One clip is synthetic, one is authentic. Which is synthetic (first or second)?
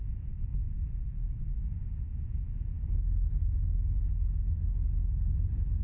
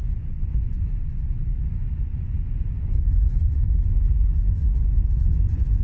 second